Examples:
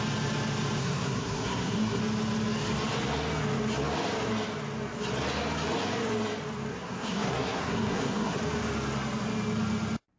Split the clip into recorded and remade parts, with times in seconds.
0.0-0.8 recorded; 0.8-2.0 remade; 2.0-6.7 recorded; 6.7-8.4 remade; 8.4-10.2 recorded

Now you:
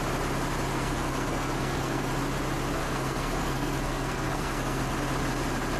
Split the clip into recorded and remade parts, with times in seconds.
0.0-0.7 recorded; 0.7-2.1 remade; 2.1-2.8 recorded; 2.8-4.8 remade; 4.8-5.8 recorded

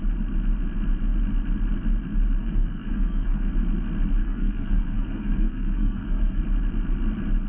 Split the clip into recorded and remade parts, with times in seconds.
0.0-2.4 recorded; 2.4-3.5 remade; 3.5-4.2 recorded; 4.2-6.4 remade; 6.4-7.5 recorded

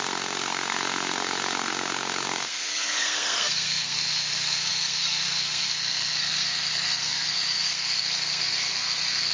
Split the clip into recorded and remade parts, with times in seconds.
0.0-9.3 remade

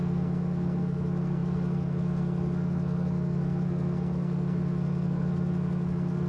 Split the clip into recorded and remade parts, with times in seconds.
0.0-6.3 remade

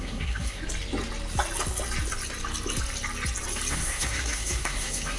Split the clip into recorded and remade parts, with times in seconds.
0.0-0.6 remade; 0.6-3.7 recorded; 3.7-5.2 remade

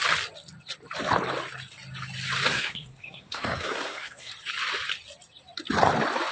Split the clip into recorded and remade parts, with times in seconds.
0.0-2.5 recorded; 2.5-4.3 remade; 4.3-6.3 recorded

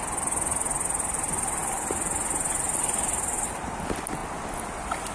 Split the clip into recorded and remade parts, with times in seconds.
0.0-5.1 recorded